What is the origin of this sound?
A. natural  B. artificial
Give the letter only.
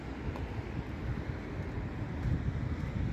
A